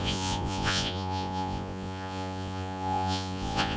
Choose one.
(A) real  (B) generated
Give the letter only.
B